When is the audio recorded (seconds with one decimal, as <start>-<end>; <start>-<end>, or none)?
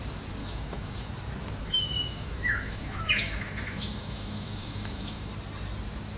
0.0-0.4; 1.1-1.6; 5.3-6.2